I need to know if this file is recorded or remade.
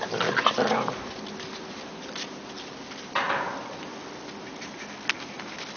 recorded